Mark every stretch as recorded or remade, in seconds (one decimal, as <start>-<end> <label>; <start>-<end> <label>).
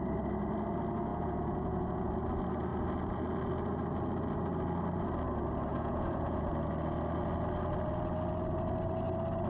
0.0-1.1 recorded; 1.1-2.1 remade; 2.1-5.7 recorded; 5.7-6.5 remade; 6.5-9.5 recorded